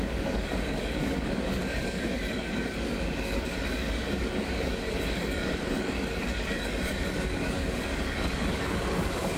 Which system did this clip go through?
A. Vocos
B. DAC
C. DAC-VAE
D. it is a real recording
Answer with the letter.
B